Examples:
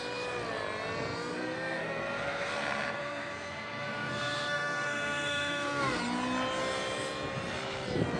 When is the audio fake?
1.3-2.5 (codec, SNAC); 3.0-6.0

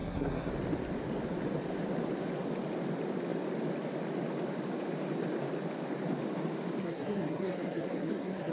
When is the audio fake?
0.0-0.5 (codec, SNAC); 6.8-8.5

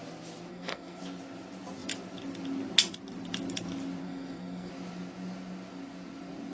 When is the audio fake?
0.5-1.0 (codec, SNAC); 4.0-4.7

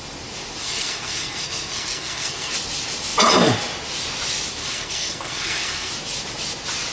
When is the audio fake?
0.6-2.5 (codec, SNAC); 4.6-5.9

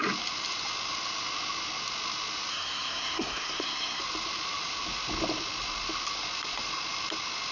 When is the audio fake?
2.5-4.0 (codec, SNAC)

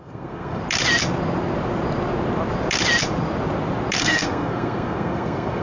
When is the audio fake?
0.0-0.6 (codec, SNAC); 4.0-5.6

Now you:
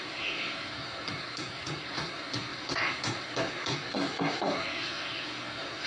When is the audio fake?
0.0-5.9 (codec, SNAC)

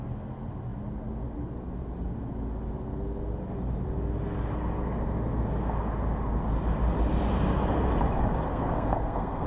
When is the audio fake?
8.5-9.5 (codec, SNAC)